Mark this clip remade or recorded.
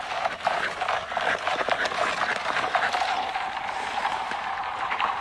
remade